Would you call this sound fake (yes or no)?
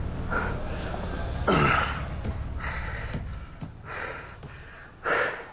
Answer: no